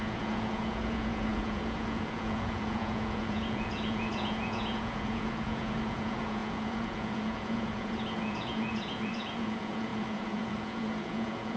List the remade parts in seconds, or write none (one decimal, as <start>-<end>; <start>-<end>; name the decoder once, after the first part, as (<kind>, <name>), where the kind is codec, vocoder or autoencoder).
0.0-11.6 (vocoder, Vocos)